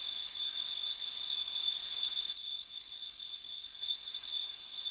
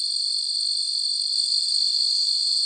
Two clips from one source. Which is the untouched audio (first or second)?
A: second